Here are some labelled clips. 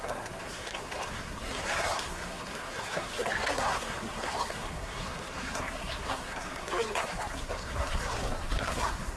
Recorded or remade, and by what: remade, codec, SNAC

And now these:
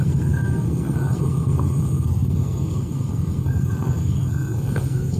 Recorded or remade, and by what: remade, codec, SNAC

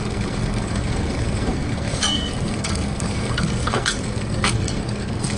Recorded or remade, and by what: remade, codec, SNAC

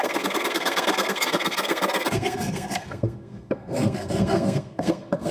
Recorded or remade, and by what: remade, codec, SNAC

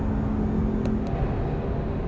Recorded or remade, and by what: recorded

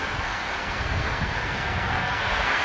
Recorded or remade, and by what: remade, codec, SNAC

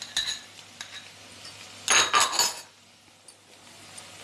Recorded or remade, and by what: recorded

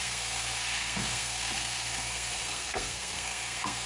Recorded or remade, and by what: remade, codec, SNAC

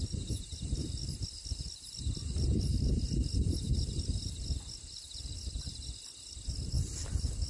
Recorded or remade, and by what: recorded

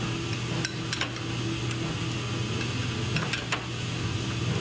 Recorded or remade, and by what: recorded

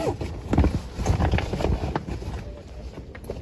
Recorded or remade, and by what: recorded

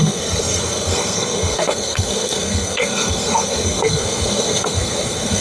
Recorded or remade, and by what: remade, codec, SNAC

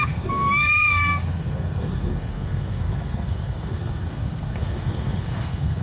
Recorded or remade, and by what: remade, codec, SNAC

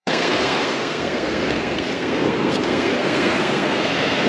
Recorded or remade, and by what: remade, codec, SNAC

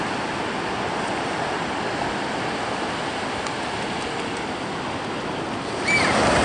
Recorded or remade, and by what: recorded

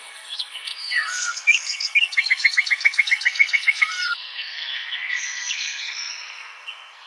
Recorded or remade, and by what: remade, codec, SNAC